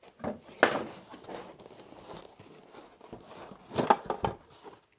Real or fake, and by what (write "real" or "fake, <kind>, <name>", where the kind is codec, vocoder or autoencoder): real